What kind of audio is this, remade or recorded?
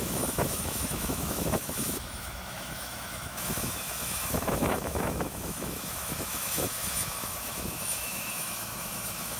remade